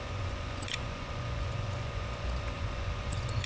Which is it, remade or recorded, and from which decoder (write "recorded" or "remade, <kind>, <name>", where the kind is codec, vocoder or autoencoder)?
remade, vocoder, Vocos